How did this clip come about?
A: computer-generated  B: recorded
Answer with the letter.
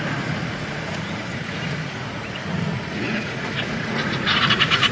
A